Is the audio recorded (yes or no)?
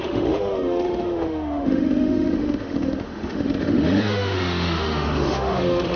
no